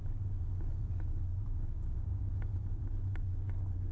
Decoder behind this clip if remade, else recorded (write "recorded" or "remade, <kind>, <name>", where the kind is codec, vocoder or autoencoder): recorded